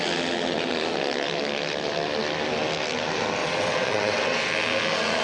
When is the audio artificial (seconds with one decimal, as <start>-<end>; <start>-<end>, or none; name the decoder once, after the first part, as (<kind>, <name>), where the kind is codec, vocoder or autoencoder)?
3.4-4.5 (vocoder, WaveNeXt)